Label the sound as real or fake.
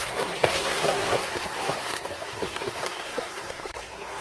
fake